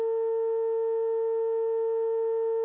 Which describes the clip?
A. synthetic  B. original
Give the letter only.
B